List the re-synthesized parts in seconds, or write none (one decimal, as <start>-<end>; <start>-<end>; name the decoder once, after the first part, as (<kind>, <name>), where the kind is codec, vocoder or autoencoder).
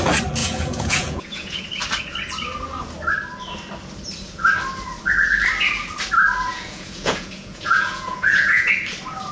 0.4-1.6 (vocoder, Vocos); 6.5-8.7